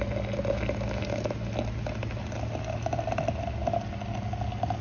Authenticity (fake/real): real